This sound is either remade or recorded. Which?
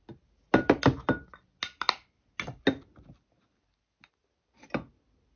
recorded